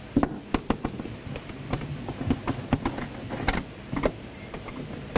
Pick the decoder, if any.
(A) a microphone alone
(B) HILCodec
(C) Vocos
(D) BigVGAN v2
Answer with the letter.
A